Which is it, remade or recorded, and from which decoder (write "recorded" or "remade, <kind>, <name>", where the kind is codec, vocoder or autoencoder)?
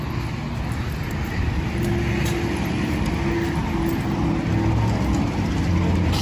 recorded